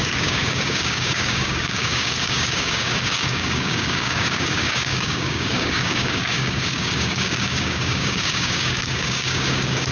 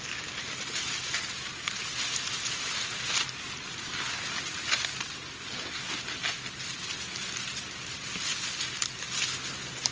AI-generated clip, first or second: first